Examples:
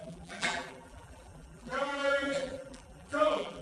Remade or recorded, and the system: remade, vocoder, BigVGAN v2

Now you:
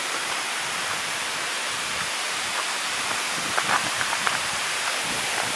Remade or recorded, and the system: remade, vocoder, BigVGAN v2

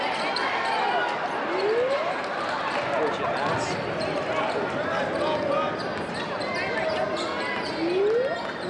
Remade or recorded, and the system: recorded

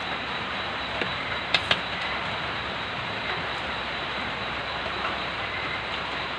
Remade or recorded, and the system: remade, vocoder, BigVGAN v2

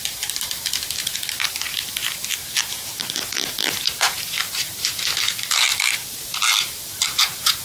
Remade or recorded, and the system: remade, vocoder, BigVGAN v2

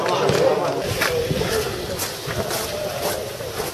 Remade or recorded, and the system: recorded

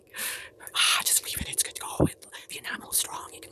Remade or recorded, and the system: recorded